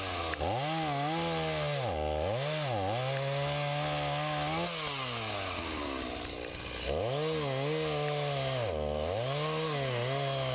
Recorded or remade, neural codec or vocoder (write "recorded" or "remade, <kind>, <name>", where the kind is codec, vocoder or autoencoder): recorded